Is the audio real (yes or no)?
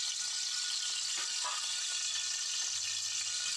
yes